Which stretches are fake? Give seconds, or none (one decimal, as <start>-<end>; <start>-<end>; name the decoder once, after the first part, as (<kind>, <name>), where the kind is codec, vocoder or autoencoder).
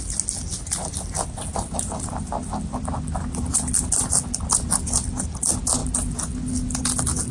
none